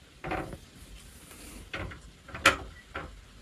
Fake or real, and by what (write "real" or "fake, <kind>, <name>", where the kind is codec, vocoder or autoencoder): real